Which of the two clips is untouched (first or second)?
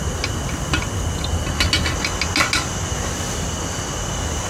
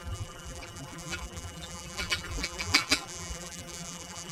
first